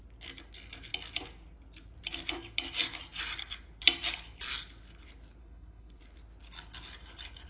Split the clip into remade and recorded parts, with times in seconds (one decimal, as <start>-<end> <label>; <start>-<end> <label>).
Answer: 0.0-5.4 recorded; 5.4-6.0 remade; 6.0-7.5 recorded